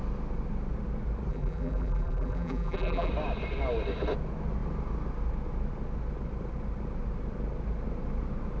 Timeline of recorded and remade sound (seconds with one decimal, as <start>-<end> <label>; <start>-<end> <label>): 0.0-1.3 recorded; 1.3-3.1 remade; 3.1-8.6 recorded